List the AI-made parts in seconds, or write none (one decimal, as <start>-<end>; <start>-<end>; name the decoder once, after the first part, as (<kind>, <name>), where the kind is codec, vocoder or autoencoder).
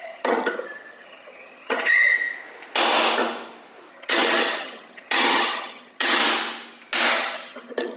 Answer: 0.0-2.1 (vocoder, HiFi-GAN); 3.9-6.2; 7.1-8.0